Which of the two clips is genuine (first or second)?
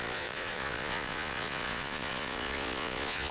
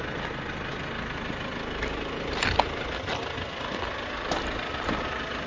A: second